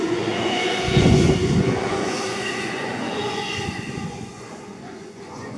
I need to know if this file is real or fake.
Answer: fake